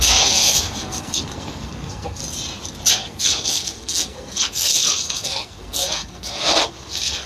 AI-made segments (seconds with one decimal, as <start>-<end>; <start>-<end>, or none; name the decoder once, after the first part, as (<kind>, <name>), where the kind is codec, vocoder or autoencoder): 0.0-2.2 (codec, SNAC); 2.9-7.3